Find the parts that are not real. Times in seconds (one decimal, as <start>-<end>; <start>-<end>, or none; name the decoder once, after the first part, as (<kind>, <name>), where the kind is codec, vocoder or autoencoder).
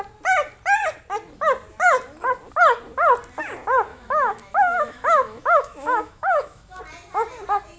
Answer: 3.9-6.8 (autoencoder, DAC-VAE)